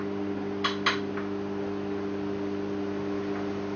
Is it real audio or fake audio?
real